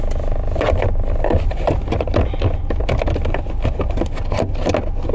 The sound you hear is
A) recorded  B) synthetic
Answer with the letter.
A